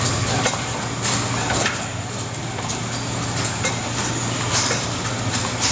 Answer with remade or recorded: recorded